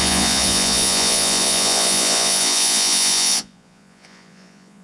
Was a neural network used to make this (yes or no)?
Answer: yes